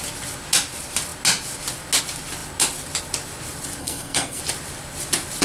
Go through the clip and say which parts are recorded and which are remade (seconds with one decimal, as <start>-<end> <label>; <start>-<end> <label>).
0.0-3.8 recorded; 3.8-4.4 remade; 4.4-5.4 recorded